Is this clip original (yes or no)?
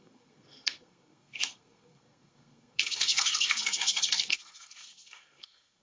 no